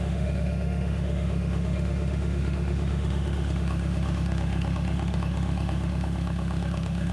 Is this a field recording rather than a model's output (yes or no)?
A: no